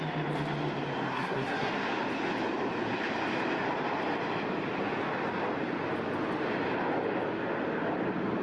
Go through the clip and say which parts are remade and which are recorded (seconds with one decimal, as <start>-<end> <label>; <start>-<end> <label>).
0.0-1.1 recorded; 1.1-1.7 remade; 1.7-8.4 recorded